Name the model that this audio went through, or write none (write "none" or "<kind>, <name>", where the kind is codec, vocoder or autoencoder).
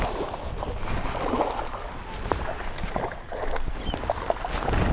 none